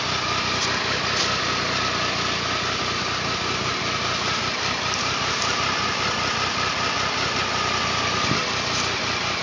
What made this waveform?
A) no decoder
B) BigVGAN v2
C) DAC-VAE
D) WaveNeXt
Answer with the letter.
A